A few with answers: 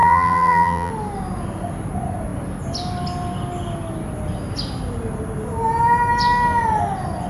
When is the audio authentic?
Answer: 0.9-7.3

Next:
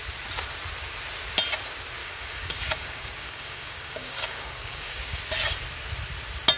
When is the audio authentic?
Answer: 0.0-2.0; 5.2-6.6

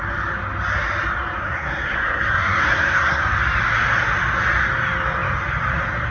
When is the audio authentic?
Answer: 0.0-1.4; 3.2-6.1

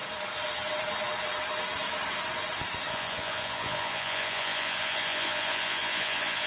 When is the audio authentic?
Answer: 0.0-2.9

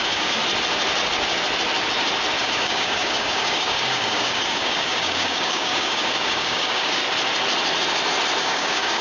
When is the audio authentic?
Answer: 0.4-2.4; 7.0-8.4

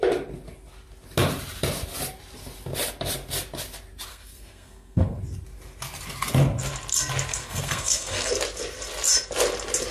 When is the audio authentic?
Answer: 0.0-4.1; 5.2-7.3; 8.3-9.9

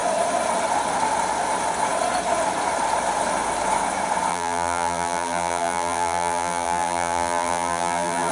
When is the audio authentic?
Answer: 0.0-4.3